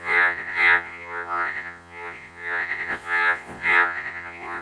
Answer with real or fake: fake